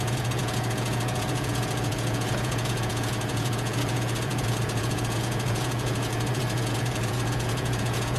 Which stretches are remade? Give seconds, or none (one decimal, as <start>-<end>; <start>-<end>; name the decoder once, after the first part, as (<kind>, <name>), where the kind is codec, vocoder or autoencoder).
0.0-8.2 (vocoder, Vocos)